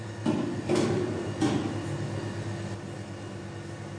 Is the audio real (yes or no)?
yes